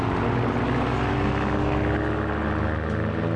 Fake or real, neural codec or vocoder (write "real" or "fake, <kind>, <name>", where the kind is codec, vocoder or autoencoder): real